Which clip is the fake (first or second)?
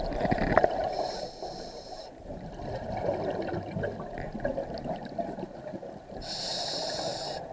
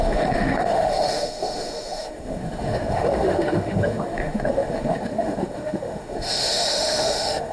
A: second